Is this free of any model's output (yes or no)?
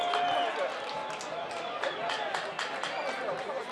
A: yes